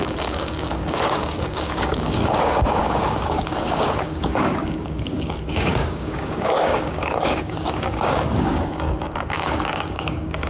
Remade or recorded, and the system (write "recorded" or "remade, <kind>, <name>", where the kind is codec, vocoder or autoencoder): remade, codec, DAC